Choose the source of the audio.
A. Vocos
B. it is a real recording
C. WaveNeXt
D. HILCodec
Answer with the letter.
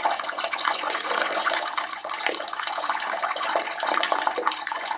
A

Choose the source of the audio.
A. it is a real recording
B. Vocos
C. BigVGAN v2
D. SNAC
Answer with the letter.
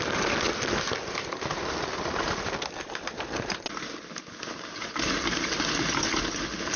A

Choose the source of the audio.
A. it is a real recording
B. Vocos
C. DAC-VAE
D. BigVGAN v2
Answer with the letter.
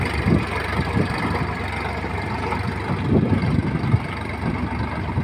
A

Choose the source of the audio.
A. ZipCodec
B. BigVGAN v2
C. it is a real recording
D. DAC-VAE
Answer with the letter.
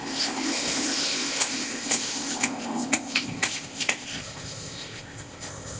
A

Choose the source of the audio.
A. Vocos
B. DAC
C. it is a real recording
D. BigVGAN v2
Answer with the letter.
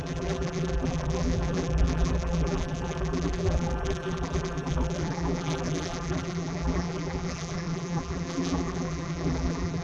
D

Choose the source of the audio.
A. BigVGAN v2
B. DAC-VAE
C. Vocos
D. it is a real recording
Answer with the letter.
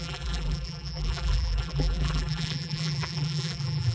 A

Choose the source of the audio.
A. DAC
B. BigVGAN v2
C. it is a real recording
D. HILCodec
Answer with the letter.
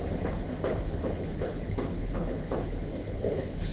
D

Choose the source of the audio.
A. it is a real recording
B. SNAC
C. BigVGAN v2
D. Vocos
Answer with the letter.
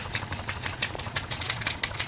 D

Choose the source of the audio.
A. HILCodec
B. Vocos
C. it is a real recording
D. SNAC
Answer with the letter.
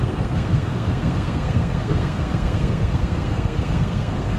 D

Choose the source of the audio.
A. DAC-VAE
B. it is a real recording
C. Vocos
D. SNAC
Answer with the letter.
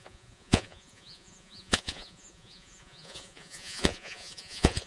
C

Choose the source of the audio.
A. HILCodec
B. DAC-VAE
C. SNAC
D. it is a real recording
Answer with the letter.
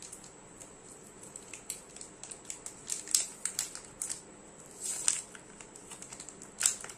D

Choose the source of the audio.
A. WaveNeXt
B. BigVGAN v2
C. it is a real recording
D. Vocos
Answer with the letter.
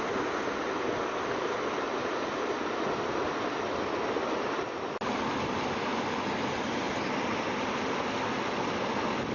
C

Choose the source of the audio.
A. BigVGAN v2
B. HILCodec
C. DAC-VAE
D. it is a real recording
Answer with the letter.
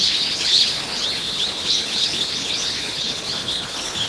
B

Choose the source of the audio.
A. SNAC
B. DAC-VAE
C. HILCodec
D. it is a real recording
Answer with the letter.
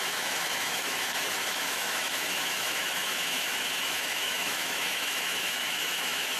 B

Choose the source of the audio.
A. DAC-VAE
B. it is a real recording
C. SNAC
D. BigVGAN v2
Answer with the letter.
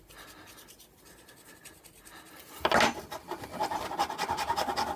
B